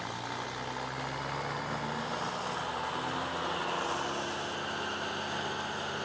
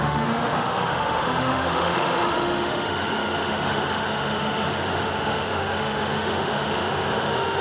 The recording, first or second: first